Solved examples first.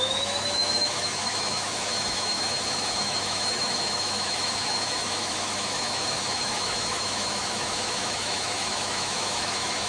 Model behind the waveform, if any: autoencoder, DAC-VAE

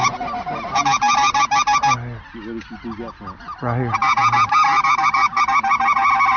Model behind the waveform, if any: none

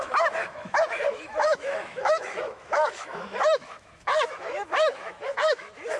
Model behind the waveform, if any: autoencoder, DAC-VAE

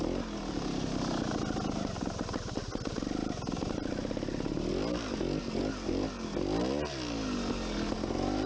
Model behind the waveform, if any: none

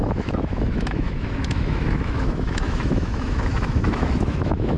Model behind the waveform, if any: autoencoder, DAC-VAE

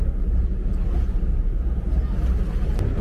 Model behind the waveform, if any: none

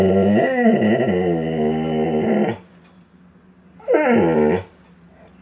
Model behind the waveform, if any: none